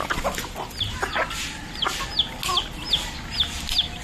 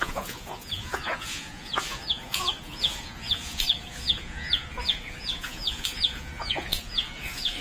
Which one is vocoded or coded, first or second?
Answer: second